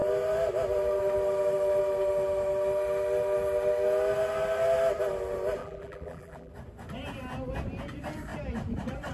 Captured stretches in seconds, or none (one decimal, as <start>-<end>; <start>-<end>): 0.0-5.6; 6.5-9.1